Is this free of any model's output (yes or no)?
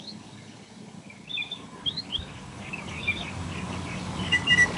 no